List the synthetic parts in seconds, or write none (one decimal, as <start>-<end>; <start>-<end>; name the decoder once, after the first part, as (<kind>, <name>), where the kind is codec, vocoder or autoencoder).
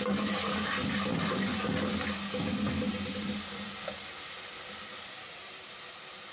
none